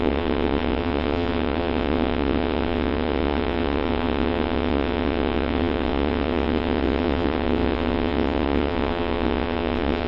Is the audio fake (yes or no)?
yes